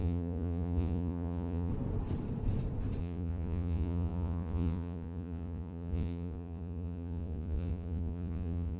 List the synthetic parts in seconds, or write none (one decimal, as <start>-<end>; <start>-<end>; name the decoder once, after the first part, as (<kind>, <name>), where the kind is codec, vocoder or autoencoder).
0.0-1.7 (vocoder, Vocos); 3.0-8.8